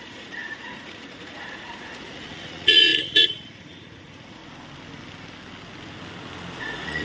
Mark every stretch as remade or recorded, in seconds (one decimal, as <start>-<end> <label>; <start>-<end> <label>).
0.0-4.4 remade; 4.4-6.6 recorded; 6.6-7.0 remade